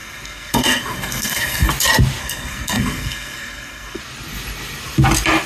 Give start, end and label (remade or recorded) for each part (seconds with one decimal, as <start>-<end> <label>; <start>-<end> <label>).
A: 0.0-1.7 remade; 1.7-2.2 recorded; 2.2-4.0 remade; 4.0-5.5 recorded